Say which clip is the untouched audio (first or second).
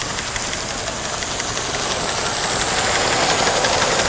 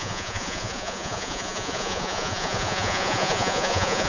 first